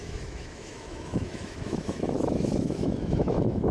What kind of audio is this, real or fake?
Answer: fake